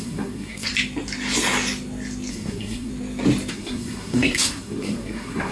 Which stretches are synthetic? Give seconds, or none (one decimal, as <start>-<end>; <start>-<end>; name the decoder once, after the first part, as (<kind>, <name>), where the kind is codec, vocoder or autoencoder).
0.0-0.7 (codec, SNAC); 2.3-2.9; 3.5-5.5